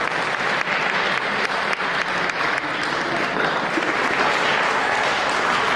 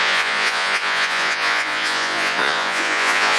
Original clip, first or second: first